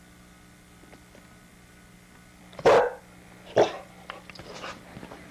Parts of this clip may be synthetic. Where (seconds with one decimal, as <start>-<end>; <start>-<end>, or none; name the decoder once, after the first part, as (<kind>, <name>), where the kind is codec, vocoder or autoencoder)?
none